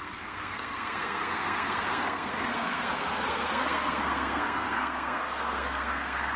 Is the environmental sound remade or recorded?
remade